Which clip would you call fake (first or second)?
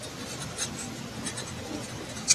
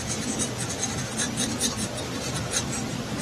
second